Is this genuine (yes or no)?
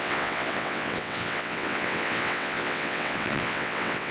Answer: no